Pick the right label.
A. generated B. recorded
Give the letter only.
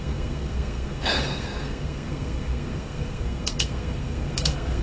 A